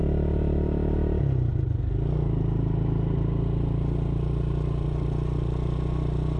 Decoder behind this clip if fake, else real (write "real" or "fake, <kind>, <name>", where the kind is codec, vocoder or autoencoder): real